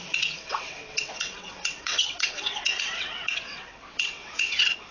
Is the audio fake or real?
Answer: fake